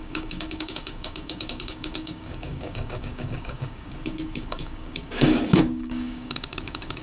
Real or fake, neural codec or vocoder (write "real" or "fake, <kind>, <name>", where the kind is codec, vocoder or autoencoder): fake, codec, DAC